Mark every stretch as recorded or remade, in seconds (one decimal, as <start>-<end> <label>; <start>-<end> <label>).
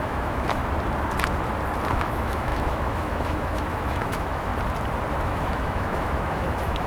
0.0-0.6 remade; 0.6-1.9 recorded; 1.9-4.5 remade; 4.5-5.2 recorded; 5.2-6.9 remade